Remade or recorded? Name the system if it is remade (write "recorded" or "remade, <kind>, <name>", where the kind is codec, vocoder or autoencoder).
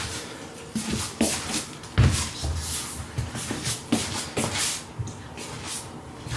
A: recorded